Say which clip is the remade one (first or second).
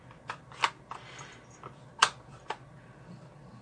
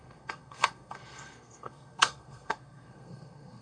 second